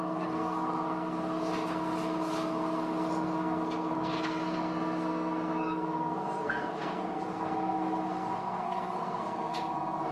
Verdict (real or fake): fake